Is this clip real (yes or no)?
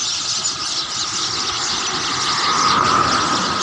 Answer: yes